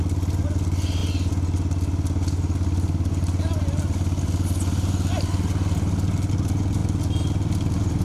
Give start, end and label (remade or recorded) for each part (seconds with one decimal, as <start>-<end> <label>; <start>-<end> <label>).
0.0-8.0 recorded